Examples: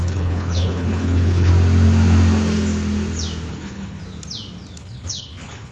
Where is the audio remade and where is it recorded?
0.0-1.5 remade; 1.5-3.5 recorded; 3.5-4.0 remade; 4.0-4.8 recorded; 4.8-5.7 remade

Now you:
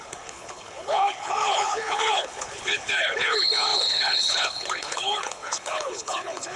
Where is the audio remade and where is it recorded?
0.0-6.6 remade